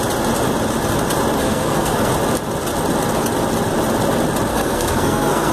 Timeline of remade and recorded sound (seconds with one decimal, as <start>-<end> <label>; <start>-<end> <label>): 0.0-1.4 recorded; 1.4-2.1 remade; 2.1-4.5 recorded; 4.5-5.5 remade